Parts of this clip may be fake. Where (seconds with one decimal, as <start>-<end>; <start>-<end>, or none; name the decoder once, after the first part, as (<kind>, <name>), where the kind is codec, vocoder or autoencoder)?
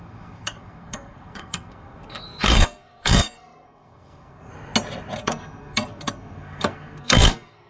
0.0-4.5 (codec, SNAC); 5.2-7.7